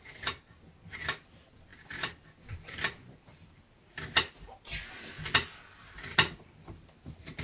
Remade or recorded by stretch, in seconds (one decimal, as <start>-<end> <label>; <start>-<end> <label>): 0.0-7.4 recorded